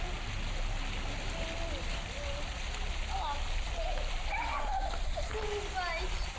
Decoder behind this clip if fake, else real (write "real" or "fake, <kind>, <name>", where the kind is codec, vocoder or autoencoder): real